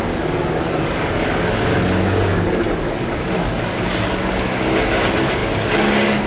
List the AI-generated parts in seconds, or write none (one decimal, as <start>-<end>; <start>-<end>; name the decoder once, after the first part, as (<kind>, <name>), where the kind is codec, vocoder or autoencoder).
0.0-6.3 (codec, DAC)